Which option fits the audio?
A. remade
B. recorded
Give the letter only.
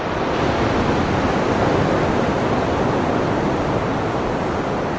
B